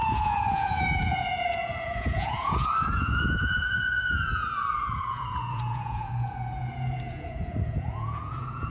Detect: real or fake fake